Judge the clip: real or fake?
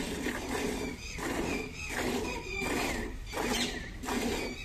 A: real